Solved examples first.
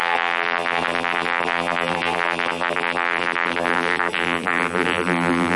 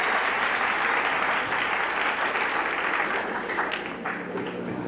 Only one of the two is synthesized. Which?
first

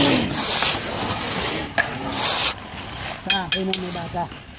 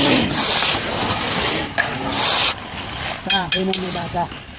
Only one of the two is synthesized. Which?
second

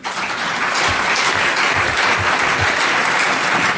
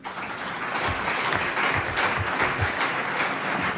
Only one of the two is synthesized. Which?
first